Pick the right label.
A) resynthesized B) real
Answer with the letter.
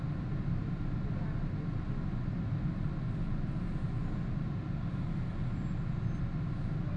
B